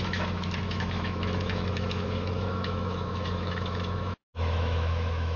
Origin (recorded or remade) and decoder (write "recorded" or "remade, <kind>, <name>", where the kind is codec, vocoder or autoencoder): remade, autoencoder, DAC-VAE